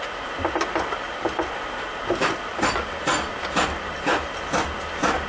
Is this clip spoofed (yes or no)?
no